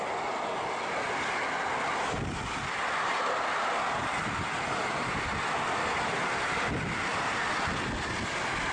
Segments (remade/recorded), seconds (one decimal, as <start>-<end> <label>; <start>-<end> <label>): 0.0-8.7 recorded

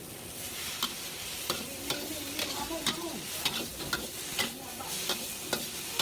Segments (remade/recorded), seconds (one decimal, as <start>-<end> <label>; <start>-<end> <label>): 0.0-6.0 recorded

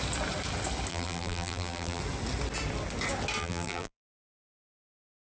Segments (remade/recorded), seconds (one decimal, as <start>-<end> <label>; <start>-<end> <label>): 0.0-0.9 recorded; 0.9-2.0 remade; 2.0-3.4 recorded; 3.4-4.4 remade; 4.4-5.2 recorded

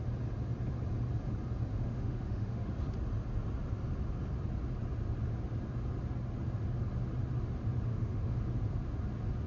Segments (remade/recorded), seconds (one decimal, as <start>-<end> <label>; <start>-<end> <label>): 0.0-1.7 recorded; 1.7-2.7 remade; 2.7-7.9 recorded; 7.9-8.4 remade; 8.4-9.5 recorded

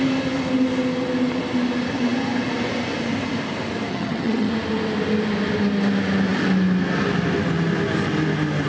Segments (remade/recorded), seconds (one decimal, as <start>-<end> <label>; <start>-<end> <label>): 0.0-3.9 recorded; 3.9-4.5 remade; 4.5-8.7 recorded

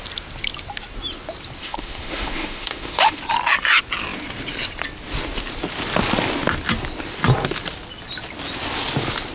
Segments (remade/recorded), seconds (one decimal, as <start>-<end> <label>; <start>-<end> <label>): 0.0-1.6 recorded; 1.6-3.2 remade; 3.2-9.3 recorded

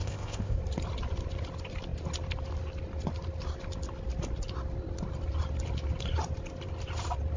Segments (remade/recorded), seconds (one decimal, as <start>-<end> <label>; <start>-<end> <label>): 0.0-0.6 remade; 0.6-7.4 recorded

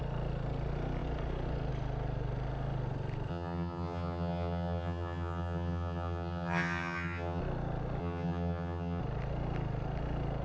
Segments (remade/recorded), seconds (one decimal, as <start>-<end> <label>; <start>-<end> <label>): 0.0-3.3 recorded; 3.3-7.4 remade; 7.4-8.0 recorded; 8.0-9.0 remade; 9.0-10.4 recorded